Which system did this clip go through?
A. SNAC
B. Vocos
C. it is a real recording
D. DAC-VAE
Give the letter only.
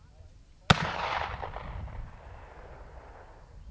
C